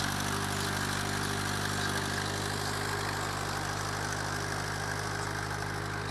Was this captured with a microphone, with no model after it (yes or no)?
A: yes